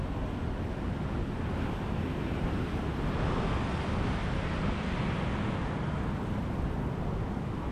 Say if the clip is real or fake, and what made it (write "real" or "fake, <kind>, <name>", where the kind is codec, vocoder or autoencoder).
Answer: real